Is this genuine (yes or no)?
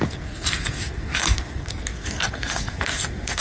no